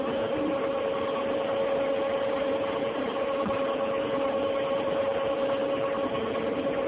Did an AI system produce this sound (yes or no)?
no